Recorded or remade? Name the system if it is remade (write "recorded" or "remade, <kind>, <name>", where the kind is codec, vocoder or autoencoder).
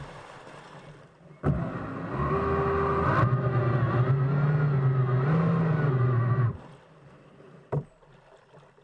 recorded